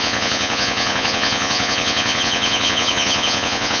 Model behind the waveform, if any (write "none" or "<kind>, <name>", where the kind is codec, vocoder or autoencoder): vocoder, Vocos